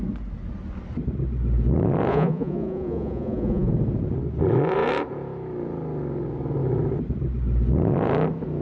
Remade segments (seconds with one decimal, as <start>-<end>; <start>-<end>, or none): 2.1-3.7